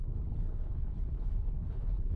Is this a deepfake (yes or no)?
yes